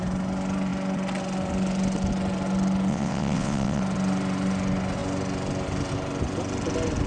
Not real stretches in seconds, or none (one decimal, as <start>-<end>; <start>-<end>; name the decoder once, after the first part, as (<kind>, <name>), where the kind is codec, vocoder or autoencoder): 2.9-3.8 (vocoder, WaveNeXt)